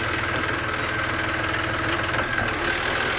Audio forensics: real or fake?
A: real